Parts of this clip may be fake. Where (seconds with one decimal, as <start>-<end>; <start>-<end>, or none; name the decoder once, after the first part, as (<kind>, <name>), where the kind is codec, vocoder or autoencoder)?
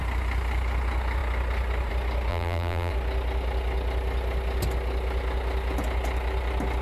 2.3-2.9 (vocoder, BigVGAN v2)